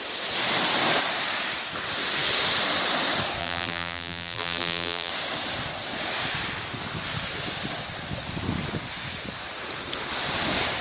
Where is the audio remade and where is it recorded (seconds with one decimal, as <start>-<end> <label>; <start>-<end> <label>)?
0.0-3.4 recorded; 3.4-5.1 remade; 5.1-10.8 recorded